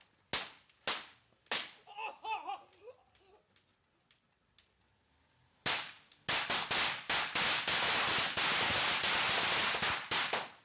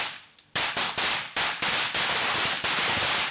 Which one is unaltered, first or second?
first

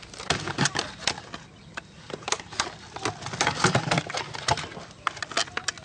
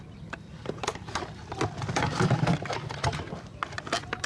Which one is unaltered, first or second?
first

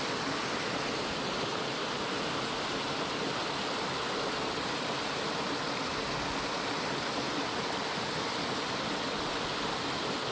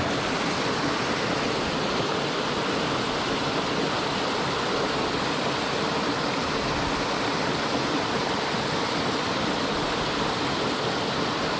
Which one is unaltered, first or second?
first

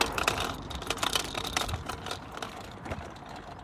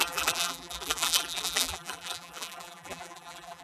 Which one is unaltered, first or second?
first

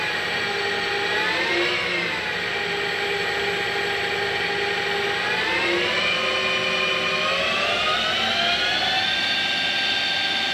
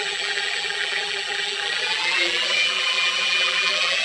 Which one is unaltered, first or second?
first